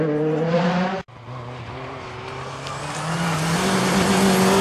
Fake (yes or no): no